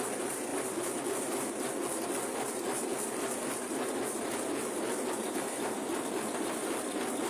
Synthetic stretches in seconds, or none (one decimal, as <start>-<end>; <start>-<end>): 0.5-1.7; 2.9-7.3